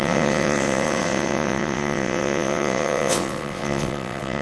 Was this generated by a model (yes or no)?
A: yes